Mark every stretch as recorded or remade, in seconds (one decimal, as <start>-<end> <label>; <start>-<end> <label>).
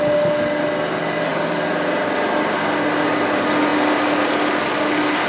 0.0-1.3 recorded; 1.3-2.3 remade; 2.3-5.3 recorded